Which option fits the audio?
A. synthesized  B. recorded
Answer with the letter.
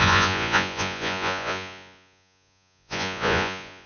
A